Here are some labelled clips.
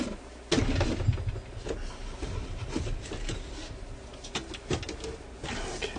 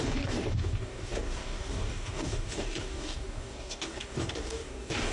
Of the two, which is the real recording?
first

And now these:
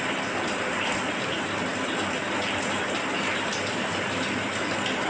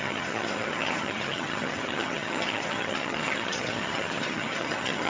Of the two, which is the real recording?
first